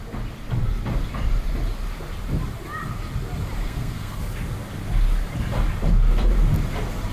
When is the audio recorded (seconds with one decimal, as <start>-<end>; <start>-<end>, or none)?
0.0-3.6; 4.2-7.1